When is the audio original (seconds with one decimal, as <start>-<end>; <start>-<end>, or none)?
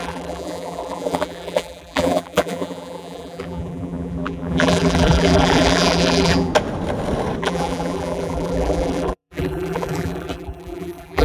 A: 6.5-7.4